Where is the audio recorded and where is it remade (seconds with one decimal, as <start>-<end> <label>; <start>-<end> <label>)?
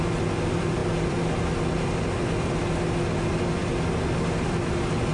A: 0.0-0.8 recorded; 0.8-1.3 remade; 1.3-5.1 recorded